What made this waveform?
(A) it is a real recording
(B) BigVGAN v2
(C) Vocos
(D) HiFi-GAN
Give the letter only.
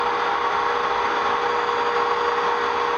A